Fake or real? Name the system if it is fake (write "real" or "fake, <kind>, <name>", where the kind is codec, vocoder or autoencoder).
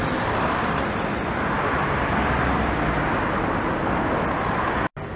real